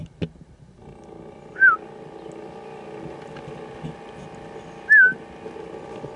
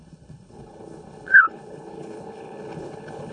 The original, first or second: first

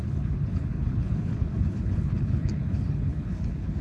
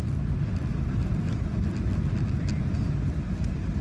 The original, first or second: second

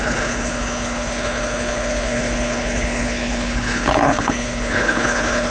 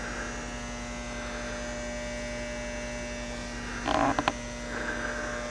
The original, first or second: second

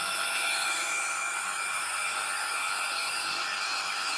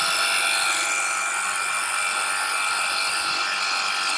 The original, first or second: second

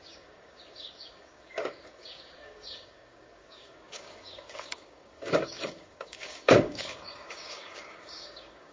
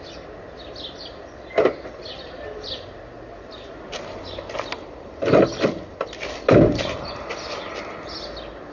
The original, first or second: second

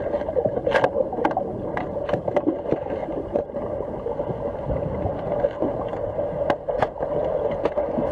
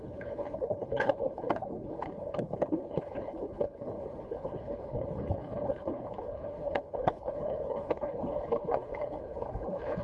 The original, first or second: first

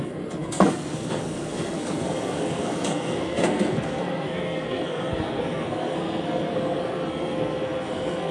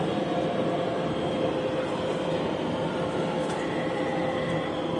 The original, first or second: second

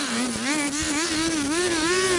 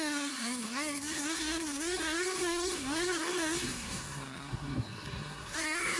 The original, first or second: first